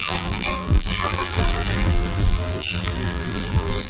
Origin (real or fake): fake